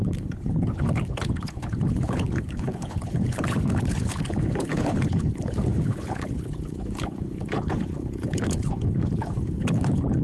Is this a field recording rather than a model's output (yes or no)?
no